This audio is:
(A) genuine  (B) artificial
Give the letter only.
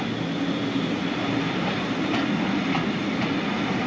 A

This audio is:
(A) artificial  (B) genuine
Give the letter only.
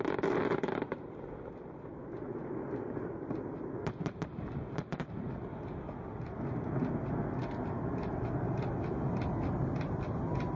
B